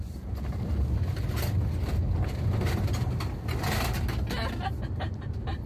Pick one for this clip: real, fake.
real